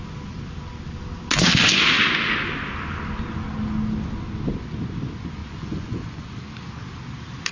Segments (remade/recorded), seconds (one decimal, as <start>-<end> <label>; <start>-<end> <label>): 0.0-5.4 recorded; 5.4-6.4 remade; 6.4-7.5 recorded